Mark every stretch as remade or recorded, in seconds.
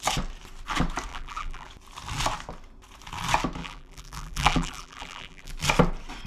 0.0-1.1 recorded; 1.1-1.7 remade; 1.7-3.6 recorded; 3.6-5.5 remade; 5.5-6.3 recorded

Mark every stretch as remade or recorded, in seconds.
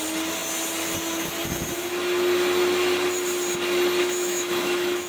0.0-4.0 recorded; 4.0-5.1 remade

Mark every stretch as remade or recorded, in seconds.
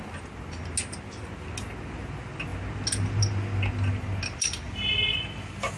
0.0-5.8 recorded